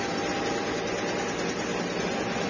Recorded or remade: recorded